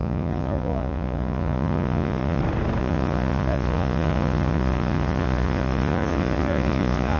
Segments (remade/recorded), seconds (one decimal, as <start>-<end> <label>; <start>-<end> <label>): 0.0-2.4 remade; 2.4-2.8 recorded; 2.8-7.2 remade